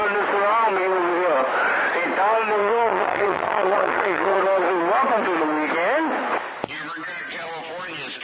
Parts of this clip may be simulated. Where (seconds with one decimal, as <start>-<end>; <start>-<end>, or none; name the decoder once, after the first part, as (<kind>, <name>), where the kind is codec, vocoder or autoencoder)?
2.6-4.4 (vocoder, HiFi-GAN)